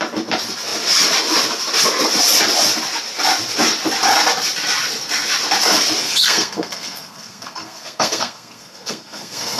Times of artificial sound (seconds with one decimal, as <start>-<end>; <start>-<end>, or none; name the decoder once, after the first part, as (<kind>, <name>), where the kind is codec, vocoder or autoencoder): 6.0-9.6 (codec, SNAC)